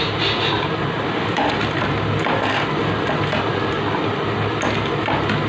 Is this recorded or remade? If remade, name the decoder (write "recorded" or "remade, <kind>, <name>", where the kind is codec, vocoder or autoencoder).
recorded